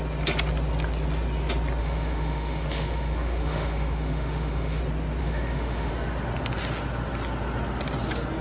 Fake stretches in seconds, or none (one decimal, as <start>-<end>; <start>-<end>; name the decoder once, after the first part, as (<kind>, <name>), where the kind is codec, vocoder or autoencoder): 1.8-4.8 (autoencoder, DAC-VAE); 5.2-5.9